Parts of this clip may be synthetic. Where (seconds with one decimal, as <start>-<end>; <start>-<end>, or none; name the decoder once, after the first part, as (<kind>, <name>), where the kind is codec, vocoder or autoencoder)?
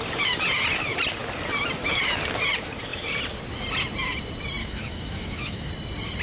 4.6-5.7 (autoencoder, DAC-VAE)